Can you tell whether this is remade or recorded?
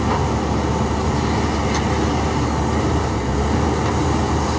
recorded